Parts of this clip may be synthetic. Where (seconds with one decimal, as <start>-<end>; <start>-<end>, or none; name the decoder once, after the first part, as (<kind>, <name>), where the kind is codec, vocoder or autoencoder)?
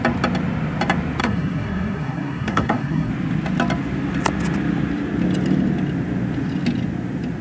1.2-3.1 (codec, SNAC)